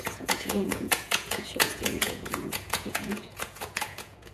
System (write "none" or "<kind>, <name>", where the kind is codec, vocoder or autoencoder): vocoder, Vocos